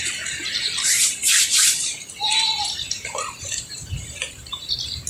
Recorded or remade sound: remade